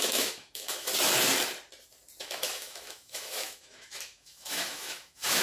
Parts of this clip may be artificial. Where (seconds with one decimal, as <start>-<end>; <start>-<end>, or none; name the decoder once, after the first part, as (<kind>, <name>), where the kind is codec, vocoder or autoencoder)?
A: 0.0-0.9 (autoencoder, DAC-VAE); 2.2-5.4